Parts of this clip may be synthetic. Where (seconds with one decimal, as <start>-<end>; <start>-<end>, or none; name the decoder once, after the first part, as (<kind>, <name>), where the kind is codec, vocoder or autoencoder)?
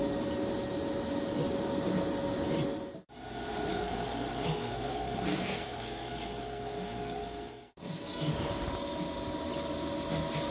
3.7-8.5 (codec, SNAC)